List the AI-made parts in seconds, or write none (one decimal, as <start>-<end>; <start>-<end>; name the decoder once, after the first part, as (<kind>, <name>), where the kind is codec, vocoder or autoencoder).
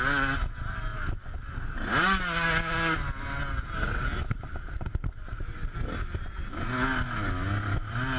0.9-1.7 (vocoder, BigVGAN v2)